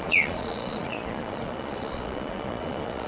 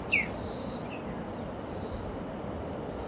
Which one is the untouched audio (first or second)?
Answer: second